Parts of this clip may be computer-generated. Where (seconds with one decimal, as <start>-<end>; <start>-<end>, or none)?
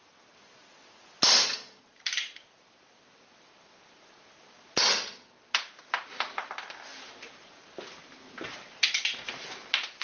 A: none